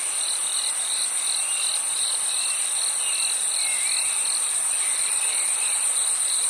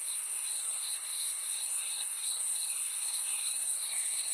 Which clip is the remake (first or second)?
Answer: second